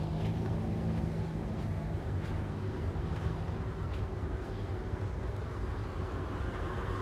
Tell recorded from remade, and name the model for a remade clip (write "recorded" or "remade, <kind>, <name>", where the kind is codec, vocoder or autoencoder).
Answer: remade, codec, SNAC